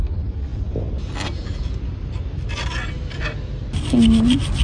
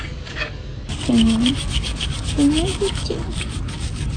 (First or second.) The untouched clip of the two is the first